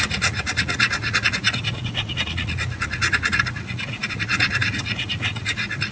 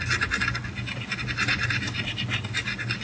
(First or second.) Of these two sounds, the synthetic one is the first